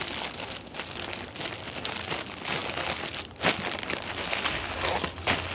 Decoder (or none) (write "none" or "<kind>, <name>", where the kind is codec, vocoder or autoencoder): none